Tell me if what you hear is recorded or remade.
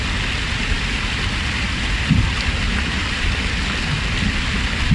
recorded